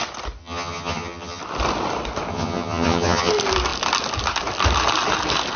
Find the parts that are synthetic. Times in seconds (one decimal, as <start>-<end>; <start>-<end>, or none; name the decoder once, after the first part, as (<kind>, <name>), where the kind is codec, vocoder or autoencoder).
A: 0.4-1.4 (vocoder, HiFi-GAN); 2.3-3.3